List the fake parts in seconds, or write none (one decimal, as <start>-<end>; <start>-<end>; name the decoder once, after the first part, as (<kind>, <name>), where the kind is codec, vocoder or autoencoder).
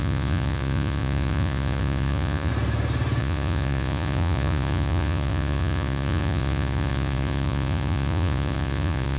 0.0-2.5 (vocoder, Vocos); 3.2-9.2